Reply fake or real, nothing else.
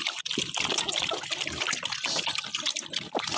real